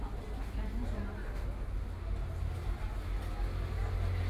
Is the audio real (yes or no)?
yes